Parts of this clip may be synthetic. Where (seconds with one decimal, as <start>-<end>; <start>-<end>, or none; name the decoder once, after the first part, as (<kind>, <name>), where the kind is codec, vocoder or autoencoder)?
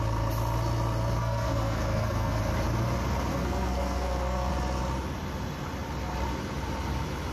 1.2-2.4 (codec, SNAC); 3.3-4.5